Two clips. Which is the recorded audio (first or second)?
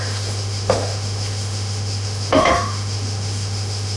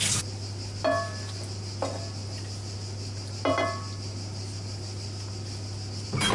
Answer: second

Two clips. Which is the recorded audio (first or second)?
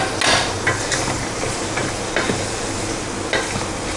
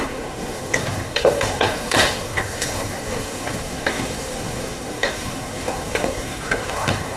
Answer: first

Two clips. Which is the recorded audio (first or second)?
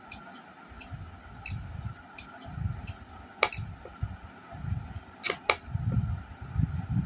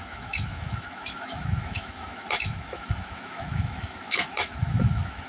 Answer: first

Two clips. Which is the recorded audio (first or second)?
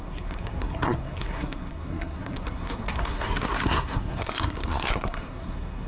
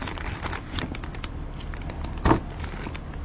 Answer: second